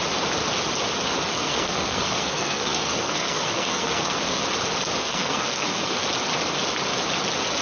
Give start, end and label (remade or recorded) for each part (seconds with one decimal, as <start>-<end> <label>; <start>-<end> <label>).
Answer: 0.0-1.3 recorded; 1.3-4.4 remade; 4.4-5.0 recorded; 5.0-6.0 remade; 6.0-7.6 recorded